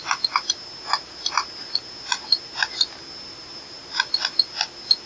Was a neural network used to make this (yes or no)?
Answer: no